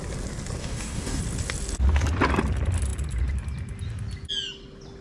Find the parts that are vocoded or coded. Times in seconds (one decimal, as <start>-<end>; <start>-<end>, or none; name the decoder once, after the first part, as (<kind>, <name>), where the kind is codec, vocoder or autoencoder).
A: 0.6-1.2 (codec, DAC)